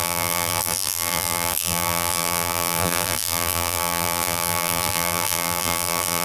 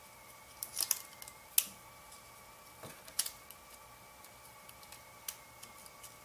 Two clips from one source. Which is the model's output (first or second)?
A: first